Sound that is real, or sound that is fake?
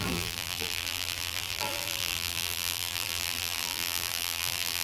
fake